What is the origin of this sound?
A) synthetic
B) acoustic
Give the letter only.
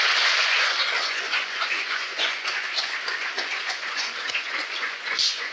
A